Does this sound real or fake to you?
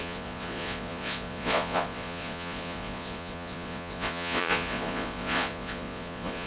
fake